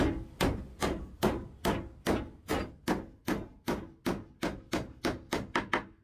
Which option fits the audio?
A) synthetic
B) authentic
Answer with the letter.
B